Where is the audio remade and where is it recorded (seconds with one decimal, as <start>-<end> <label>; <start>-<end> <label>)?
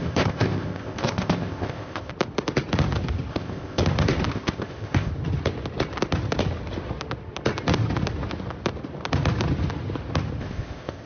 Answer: 0.0-2.1 remade; 2.1-3.3 recorded; 3.3-3.8 remade; 3.8-4.3 recorded; 4.3-5.1 remade; 5.1-10.4 recorded; 10.4-11.1 remade